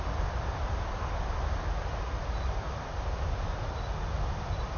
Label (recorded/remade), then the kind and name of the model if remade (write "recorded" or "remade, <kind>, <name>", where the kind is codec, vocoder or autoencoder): recorded